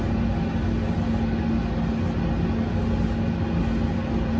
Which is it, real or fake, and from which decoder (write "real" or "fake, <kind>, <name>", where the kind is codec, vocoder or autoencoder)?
real